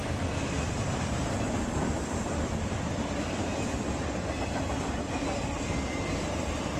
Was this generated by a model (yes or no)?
no